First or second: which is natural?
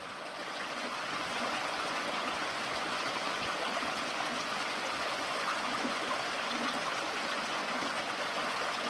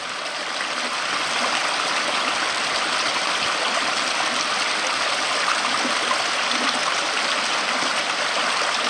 second